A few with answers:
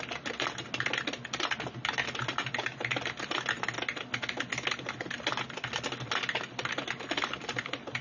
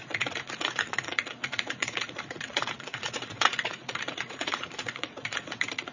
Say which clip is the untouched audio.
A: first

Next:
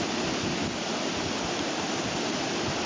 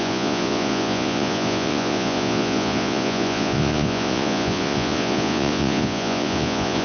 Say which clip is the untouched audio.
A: first